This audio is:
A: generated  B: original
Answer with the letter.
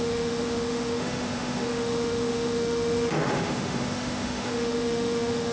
A